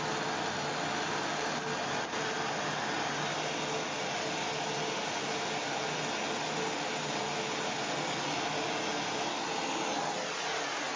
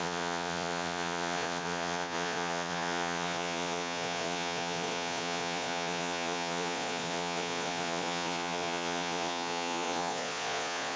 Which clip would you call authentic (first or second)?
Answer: first